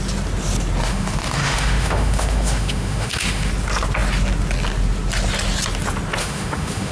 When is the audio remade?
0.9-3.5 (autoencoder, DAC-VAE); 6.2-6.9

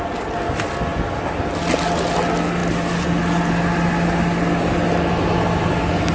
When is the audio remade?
none